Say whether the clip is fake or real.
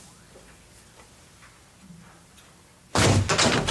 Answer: real